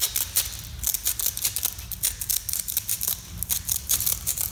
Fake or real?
real